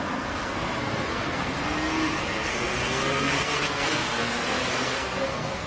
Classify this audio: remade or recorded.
remade